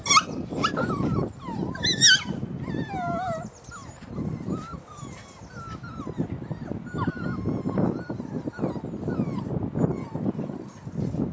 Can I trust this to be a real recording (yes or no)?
yes